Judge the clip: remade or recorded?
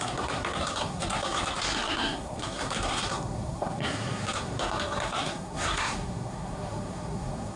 remade